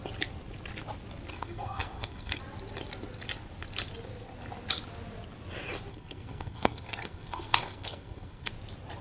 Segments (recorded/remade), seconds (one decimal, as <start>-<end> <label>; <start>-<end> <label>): 0.0-1.3 recorded; 1.3-2.4 remade; 2.4-5.9 recorded; 5.9-8.5 remade; 8.5-9.0 recorded